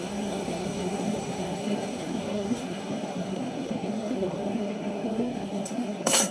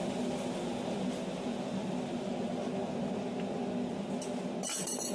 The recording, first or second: second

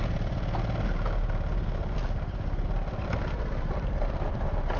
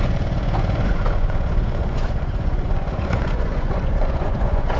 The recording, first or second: first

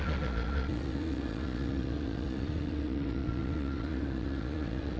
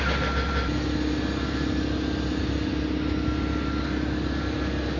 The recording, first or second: second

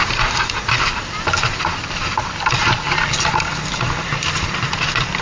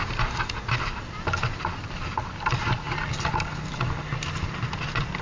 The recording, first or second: second